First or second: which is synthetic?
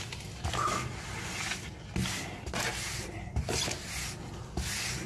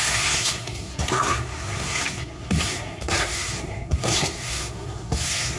second